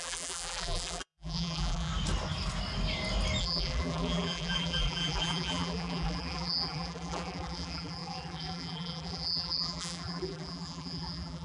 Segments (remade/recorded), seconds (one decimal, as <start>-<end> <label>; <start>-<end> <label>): 0.0-1.9 remade; 1.9-3.4 recorded; 3.4-11.4 remade